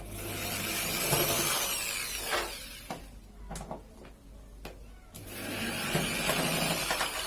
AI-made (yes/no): no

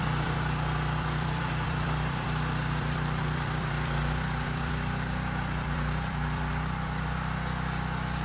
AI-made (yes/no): yes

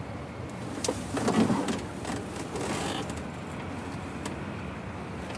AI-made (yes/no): no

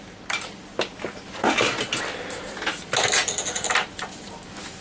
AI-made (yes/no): no